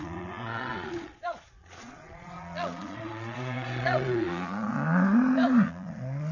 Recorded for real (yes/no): no